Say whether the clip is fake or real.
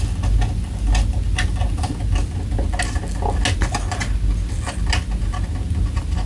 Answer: real